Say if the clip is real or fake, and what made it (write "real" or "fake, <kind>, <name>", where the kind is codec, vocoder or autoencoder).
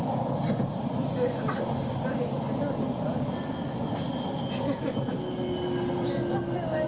real